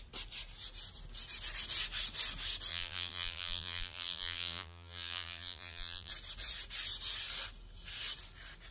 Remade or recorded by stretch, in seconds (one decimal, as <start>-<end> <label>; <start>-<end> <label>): 0.0-2.7 recorded; 2.7-6.1 remade; 6.1-8.7 recorded